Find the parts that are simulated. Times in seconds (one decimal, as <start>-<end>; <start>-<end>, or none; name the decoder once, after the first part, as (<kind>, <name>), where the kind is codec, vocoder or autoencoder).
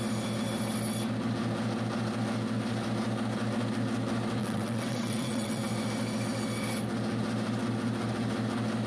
4.4-5.6 (vocoder, WaveNeXt)